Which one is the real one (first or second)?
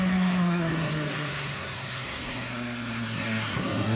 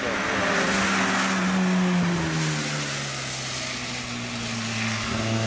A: second